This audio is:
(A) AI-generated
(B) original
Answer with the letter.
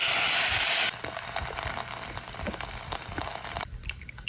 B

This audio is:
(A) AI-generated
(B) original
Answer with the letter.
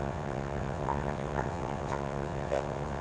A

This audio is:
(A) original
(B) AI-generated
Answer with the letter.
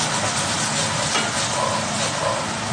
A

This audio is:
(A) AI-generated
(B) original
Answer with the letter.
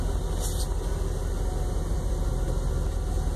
B